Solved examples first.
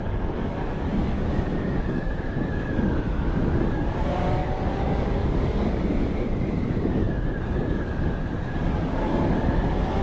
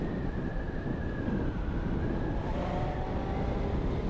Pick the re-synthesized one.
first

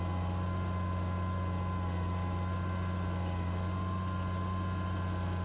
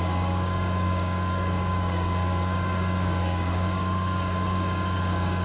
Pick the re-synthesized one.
second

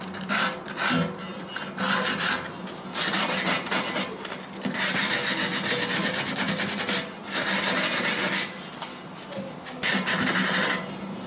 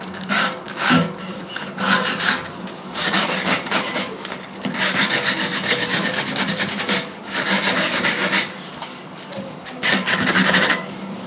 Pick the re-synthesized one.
second